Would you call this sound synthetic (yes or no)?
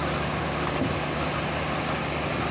no